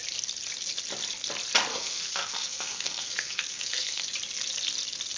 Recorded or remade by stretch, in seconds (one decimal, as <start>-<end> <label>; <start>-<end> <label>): 0.0-1.7 recorded; 1.7-4.0 remade; 4.0-5.2 recorded